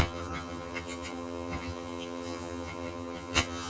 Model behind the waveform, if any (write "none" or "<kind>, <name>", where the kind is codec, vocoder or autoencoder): vocoder, HiFi-GAN